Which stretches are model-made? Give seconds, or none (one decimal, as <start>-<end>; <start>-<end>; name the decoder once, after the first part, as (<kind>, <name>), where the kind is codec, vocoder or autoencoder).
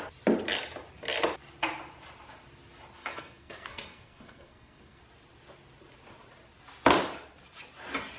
3.0-5.0 (codec, SNAC)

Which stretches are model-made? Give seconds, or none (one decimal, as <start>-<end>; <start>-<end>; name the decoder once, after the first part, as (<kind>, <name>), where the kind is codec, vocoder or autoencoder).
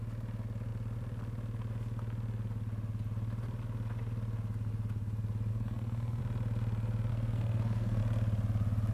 5.5-6.2 (codec, SNAC); 7.1-8.0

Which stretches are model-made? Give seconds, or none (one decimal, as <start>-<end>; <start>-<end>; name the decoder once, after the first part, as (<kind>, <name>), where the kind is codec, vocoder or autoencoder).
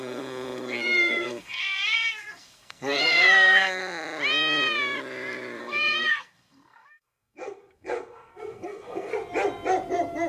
0.0-3.8 (codec, SNAC); 5.6-9.1